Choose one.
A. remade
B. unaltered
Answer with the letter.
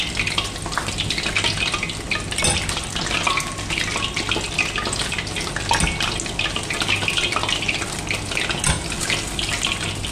B